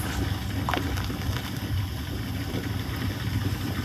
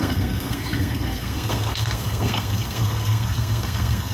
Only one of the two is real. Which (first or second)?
first